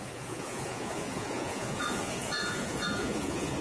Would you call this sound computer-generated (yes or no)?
yes